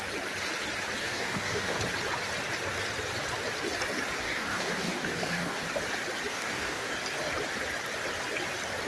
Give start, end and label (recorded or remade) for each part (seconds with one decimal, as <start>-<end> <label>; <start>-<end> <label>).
0.0-1.0 recorded; 1.0-1.8 remade; 1.8-4.2 recorded; 4.2-5.6 remade; 5.6-6.3 recorded; 6.3-6.9 remade; 6.9-8.9 recorded